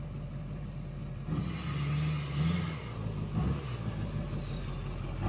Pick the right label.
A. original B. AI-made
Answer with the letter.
A